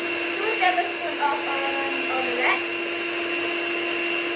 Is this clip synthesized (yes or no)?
no